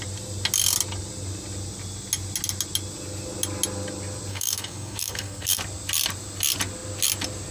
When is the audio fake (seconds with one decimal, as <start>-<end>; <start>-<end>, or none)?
4.3-5.6